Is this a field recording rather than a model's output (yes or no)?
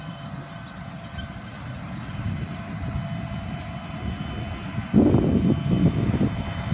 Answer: yes